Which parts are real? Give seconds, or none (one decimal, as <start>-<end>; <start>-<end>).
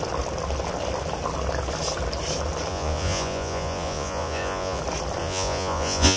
0.0-2.7; 4.8-5.2